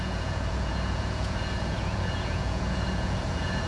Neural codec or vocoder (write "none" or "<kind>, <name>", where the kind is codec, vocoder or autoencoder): vocoder, Vocos